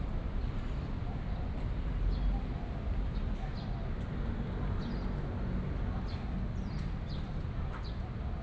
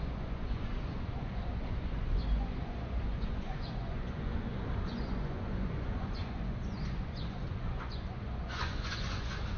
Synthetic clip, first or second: second